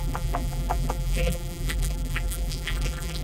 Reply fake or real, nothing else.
fake